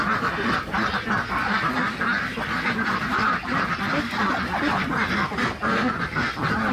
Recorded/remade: recorded